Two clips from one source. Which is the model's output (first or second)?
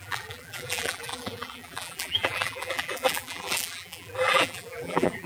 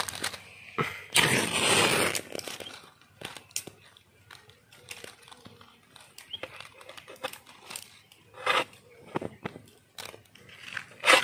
first